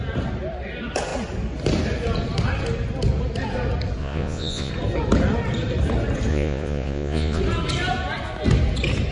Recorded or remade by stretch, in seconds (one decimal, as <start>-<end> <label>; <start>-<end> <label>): 0.0-4.0 recorded; 4.0-4.7 remade; 4.7-6.3 recorded; 6.3-7.4 remade; 7.4-9.1 recorded